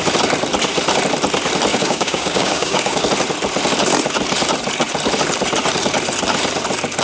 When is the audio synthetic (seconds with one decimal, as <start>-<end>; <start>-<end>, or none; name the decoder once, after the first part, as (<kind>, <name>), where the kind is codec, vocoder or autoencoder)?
1.7-3.0 (codec, DAC)